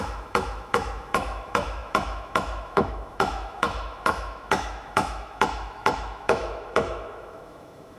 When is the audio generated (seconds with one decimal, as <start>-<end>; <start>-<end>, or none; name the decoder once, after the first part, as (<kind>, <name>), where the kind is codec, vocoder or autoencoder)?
0.0-8.0 (autoencoder, DAC-VAE)